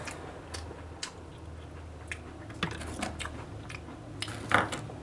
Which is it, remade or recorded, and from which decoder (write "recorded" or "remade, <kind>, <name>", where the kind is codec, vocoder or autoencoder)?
recorded